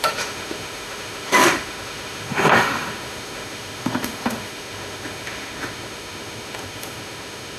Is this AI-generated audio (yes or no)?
yes